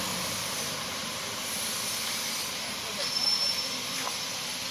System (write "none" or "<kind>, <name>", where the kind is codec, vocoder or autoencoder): none